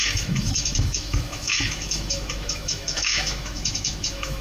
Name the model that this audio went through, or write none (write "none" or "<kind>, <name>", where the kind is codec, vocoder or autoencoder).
autoencoder, DAC-VAE